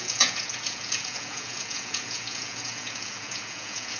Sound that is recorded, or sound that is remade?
remade